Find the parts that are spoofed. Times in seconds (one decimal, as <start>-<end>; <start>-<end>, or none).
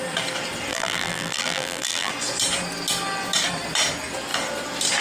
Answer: 0.7-2.1